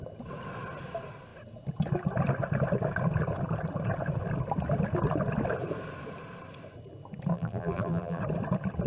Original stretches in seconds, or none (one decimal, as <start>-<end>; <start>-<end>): 0.0-7.3; 8.2-8.9